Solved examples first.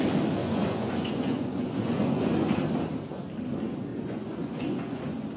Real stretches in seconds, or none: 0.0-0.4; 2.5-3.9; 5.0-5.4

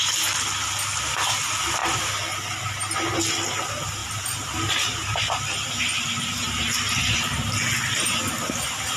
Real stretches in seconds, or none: 0.0-4.0; 5.2-9.0

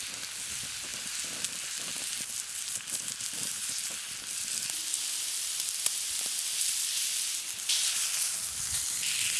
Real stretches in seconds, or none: 0.0-9.4

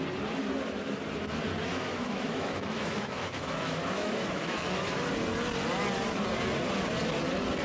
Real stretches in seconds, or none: 0.0-1.7; 5.1-7.6